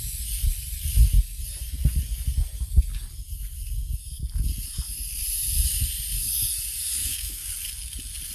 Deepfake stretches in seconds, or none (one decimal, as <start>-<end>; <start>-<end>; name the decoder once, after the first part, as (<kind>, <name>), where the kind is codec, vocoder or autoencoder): 7.0-7.5 (autoencoder, DAC-VAE)